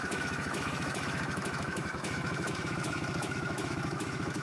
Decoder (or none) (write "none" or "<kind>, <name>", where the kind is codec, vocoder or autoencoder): autoencoder, DAC-VAE